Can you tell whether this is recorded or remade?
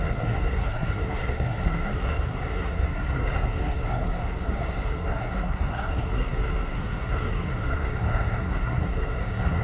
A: remade